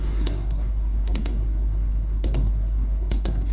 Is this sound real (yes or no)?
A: no